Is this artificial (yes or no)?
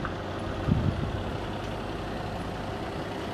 no